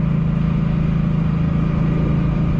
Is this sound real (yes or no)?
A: yes